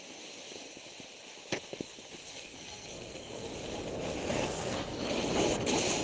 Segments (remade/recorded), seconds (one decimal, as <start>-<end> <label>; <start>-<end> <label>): 0.0-2.2 recorded; 2.2-3.5 remade; 3.5-4.3 recorded; 4.3-5.0 remade; 5.0-6.0 recorded